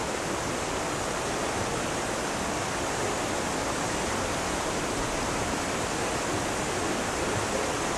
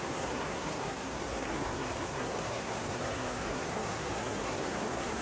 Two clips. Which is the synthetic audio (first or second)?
second